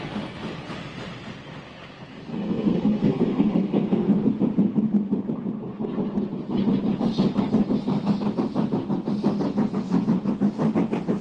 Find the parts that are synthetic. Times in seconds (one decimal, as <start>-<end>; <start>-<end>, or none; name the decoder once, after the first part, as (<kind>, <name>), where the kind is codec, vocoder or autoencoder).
2.3-4.3 (codec, SNAC)